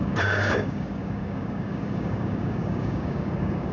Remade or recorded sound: remade